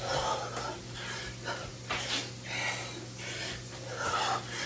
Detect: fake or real real